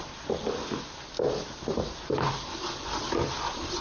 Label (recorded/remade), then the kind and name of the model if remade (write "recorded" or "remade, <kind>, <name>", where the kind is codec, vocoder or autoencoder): recorded